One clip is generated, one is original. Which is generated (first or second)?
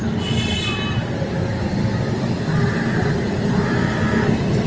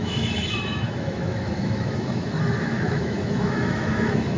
second